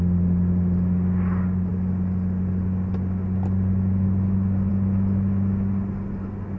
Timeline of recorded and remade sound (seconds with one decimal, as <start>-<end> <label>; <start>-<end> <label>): 0.0-6.6 recorded